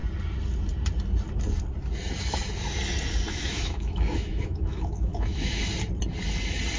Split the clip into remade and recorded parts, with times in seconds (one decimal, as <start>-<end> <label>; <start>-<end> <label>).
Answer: 0.0-3.3 recorded; 3.3-5.6 remade; 5.6-6.8 recorded